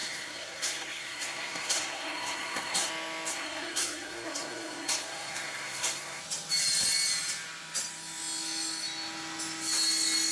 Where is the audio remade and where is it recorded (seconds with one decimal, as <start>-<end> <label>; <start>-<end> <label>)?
0.0-2.9 remade; 2.9-3.3 recorded; 3.3-6.2 remade; 6.2-10.3 recorded

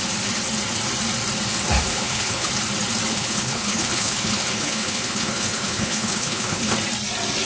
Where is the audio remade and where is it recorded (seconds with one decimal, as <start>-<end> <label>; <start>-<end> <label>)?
0.0-1.9 recorded; 1.9-2.5 remade; 2.5-3.1 recorded; 3.1-6.7 remade; 6.7-7.5 recorded

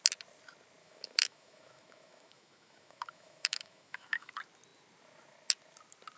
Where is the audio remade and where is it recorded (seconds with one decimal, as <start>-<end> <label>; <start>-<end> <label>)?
0.0-0.8 recorded; 0.8-4.3 remade; 4.3-6.2 recorded

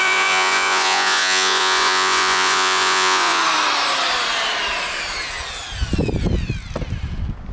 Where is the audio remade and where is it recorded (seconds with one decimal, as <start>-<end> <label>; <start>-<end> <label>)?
0.0-3.4 remade; 3.4-7.5 recorded

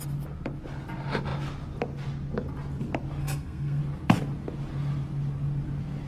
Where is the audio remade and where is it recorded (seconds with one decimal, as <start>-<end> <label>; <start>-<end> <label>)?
0.0-3.2 recorded; 3.2-3.8 remade; 3.8-6.1 recorded

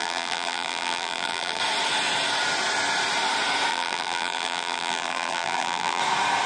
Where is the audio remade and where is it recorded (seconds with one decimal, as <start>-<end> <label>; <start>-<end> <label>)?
0.0-1.6 remade; 1.6-3.7 recorded; 3.7-6.0 remade; 6.0-6.5 recorded